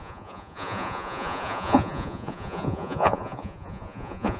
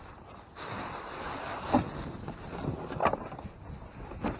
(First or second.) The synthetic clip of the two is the first